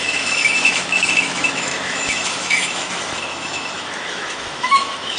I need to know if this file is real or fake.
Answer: fake